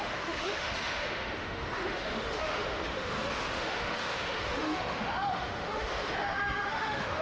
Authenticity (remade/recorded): remade